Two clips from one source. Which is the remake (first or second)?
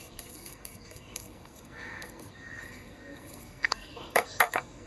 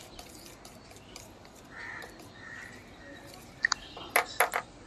first